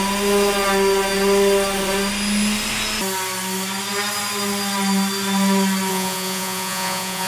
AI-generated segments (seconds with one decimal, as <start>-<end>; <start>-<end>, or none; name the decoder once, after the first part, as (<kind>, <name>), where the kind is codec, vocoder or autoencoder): 5.9-7.3 (vocoder, Vocos)